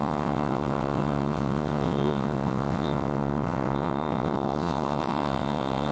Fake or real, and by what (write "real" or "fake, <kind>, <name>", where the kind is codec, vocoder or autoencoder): fake, vocoder, WaveNeXt